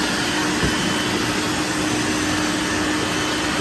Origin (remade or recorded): recorded